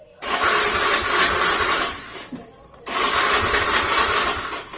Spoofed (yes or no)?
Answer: no